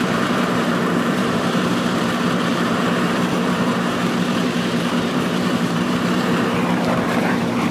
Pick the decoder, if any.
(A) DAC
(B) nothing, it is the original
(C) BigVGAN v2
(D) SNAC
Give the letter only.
C